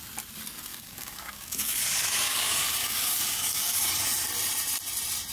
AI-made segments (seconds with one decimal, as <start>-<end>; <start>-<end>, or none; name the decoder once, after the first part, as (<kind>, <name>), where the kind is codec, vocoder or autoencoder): 0.7-3.9 (codec, DAC)

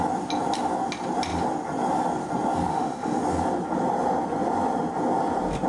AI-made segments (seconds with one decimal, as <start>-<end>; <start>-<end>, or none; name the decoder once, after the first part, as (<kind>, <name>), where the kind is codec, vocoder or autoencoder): 2.7-3.2 (autoencoder, DAC-VAE)

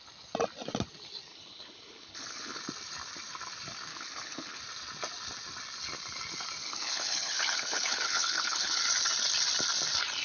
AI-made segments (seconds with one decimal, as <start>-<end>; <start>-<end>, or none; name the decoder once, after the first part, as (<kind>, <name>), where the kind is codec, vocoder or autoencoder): 1.3-2.6 (codec, HILCodec); 3.9-4.6; 6.6-8.8

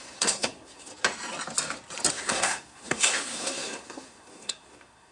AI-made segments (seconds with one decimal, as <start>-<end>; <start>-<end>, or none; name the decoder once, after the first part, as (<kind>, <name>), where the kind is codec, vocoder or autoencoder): 0.0-0.9 (codec, SNAC); 2.1-5.1